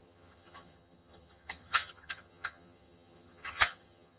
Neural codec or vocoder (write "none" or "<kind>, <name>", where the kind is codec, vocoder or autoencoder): vocoder, HiFi-GAN